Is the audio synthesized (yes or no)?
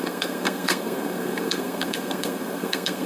yes